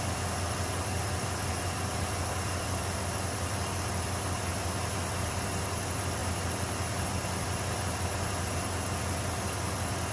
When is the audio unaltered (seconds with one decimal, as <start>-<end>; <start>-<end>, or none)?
0.0-10.1